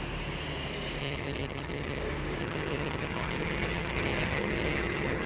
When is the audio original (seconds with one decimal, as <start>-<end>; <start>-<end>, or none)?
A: 0.0-1.0; 2.0-2.4